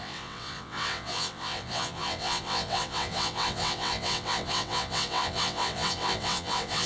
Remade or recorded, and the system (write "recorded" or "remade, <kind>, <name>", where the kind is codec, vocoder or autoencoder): remade, vocoder, WaveNeXt